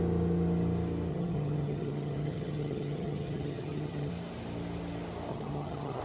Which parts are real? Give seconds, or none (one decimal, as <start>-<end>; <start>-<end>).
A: 0.0-1.1; 4.1-5.3

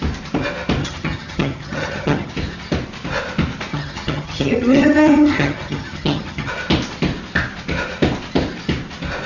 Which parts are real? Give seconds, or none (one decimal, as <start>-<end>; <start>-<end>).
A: 0.0-0.8; 2.3-3.7; 6.5-9.3

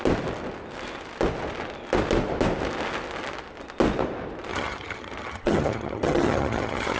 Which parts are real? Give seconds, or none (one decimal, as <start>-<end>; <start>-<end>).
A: 0.0-4.5

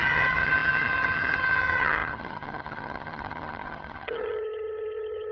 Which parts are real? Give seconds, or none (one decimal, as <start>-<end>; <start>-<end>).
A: none

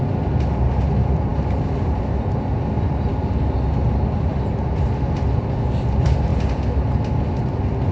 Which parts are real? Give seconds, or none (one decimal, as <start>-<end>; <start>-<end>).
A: 0.0-7.9

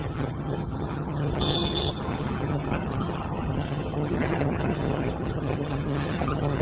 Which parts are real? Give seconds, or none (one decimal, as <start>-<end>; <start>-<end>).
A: none

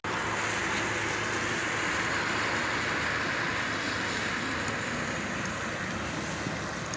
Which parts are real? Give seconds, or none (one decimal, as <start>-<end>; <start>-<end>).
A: 0.0-7.0

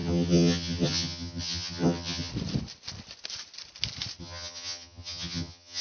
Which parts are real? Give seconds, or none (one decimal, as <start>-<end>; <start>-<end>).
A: 2.3-4.2